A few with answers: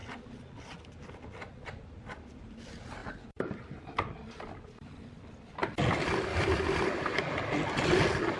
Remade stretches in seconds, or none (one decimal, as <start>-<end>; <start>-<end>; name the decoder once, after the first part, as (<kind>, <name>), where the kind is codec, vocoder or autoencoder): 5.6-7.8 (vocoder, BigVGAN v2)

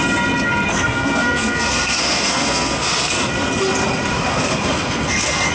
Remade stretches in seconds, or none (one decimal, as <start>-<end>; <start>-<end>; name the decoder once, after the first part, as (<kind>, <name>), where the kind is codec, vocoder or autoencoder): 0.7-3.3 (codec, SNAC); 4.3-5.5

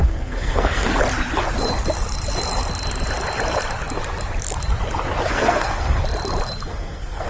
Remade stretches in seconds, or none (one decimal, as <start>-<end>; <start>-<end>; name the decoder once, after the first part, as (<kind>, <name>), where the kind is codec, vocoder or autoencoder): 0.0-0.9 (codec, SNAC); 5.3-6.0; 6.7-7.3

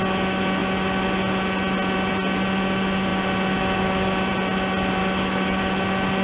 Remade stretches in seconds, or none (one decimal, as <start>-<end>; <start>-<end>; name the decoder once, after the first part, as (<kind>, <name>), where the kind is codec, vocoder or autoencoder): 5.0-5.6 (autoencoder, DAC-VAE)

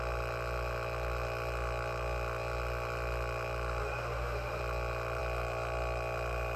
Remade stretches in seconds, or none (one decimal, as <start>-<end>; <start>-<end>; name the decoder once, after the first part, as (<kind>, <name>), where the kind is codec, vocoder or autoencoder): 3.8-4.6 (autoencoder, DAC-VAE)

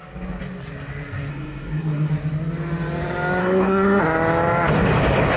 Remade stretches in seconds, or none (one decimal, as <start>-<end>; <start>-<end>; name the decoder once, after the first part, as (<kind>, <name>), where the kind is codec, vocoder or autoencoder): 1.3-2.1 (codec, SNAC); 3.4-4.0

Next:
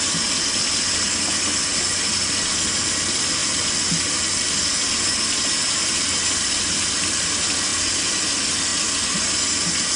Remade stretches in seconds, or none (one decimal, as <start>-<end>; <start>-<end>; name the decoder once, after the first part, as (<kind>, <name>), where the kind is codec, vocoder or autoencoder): none